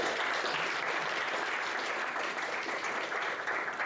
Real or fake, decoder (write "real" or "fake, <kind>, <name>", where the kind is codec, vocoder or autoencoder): real